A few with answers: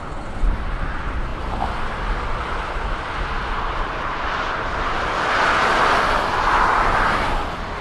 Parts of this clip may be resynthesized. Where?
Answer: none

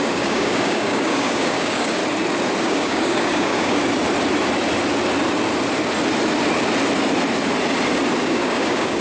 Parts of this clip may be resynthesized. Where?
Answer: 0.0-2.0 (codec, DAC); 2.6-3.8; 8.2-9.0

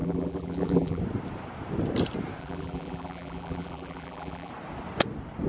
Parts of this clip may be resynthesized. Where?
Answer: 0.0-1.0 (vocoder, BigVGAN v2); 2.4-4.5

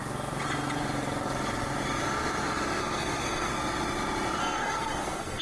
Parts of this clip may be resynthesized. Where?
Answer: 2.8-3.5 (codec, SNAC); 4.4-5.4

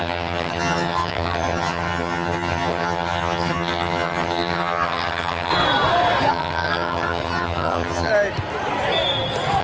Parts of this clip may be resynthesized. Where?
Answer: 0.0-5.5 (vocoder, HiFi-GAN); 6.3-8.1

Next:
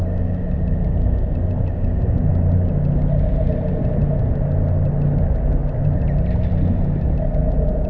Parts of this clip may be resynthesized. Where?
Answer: none